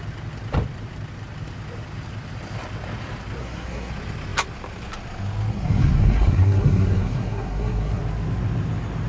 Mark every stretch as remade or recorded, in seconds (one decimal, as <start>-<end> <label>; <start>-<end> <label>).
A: 0.0-3.4 recorded; 3.4-3.9 remade; 3.9-5.5 recorded; 5.5-8.0 remade; 8.0-9.1 recorded